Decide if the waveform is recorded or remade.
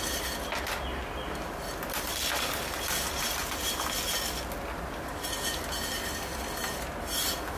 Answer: recorded